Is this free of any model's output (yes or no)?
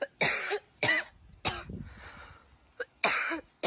yes